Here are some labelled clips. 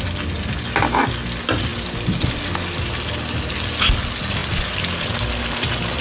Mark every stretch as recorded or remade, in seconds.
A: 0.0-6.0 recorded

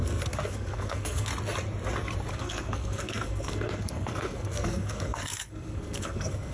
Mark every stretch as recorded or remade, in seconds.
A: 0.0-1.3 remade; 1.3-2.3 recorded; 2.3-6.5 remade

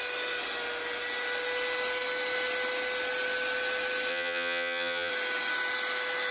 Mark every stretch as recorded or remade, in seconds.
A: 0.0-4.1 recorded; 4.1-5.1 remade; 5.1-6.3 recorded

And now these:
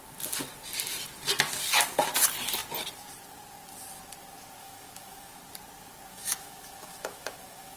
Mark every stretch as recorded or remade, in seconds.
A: 0.0-4.6 recorded; 4.6-5.4 remade; 5.4-6.1 recorded; 6.1-7.8 remade

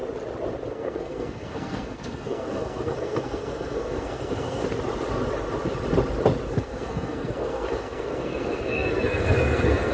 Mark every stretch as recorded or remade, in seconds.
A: 0.0-0.7 recorded; 0.7-4.6 remade; 4.6-6.6 recorded; 6.6-9.9 remade